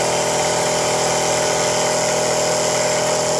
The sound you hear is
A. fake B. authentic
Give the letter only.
B